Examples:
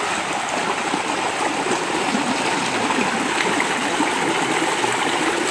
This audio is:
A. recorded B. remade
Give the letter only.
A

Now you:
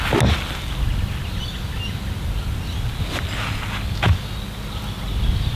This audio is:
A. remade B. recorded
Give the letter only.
B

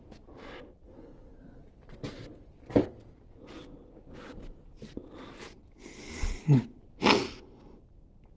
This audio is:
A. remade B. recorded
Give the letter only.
B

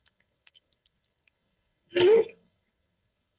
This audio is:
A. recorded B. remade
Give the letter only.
B